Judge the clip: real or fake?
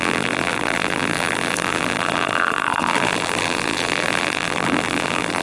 fake